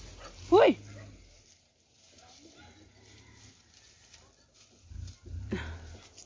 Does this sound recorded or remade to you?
recorded